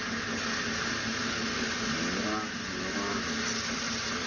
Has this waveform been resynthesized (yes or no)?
no